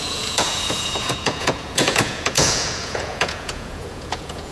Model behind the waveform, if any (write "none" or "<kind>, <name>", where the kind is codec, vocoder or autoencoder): vocoder, Vocos